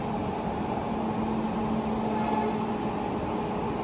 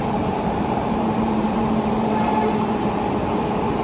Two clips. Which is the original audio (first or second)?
first